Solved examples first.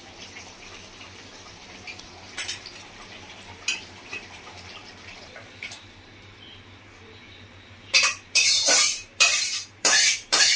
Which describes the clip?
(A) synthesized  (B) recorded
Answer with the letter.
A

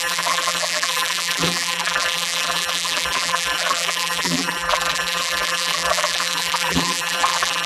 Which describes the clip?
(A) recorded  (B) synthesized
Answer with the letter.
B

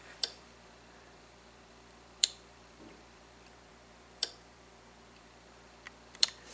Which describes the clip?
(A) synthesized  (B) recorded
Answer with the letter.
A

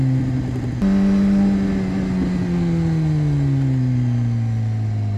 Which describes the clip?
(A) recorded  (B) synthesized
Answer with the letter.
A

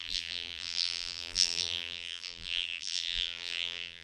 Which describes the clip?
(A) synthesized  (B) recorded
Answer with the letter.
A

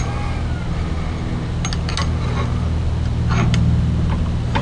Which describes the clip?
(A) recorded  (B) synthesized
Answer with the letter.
A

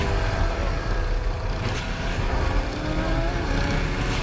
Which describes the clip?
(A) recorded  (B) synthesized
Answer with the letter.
A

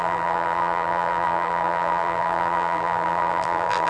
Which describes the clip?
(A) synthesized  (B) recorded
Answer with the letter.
A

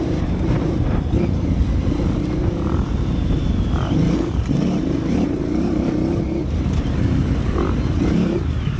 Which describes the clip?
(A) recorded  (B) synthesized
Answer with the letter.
B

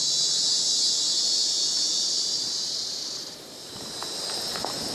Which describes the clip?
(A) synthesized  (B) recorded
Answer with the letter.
A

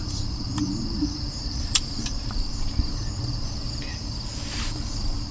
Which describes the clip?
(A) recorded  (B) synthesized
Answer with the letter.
B